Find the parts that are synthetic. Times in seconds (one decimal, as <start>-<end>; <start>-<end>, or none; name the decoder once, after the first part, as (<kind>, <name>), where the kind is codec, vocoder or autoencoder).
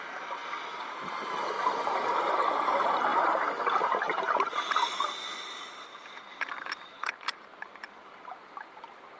none